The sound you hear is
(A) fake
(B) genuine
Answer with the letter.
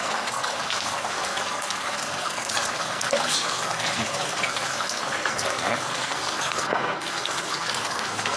A